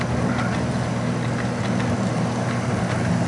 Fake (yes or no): no